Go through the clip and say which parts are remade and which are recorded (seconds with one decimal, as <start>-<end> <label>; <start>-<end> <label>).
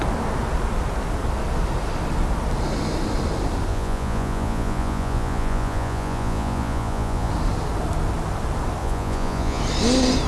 0.0-3.7 recorded; 3.7-7.3 remade; 7.3-8.8 recorded; 8.8-9.6 remade; 9.6-10.3 recorded